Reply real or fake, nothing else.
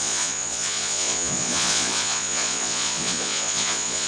fake